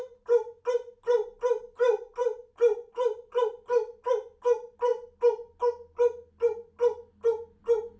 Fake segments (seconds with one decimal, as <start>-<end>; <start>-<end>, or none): 2.2-3.5